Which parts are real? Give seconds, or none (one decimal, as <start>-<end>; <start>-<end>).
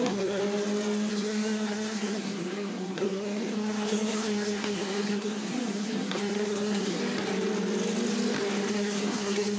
0.4-1.1; 7.0-8.7